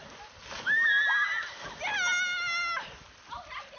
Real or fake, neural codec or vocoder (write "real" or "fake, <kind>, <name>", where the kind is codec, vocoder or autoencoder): real